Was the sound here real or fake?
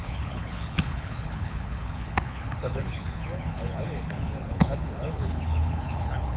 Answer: fake